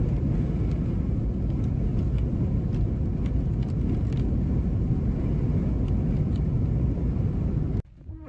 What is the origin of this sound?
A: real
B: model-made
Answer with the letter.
A